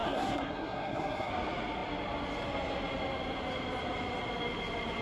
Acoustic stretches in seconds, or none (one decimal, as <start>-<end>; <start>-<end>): 1.3-5.0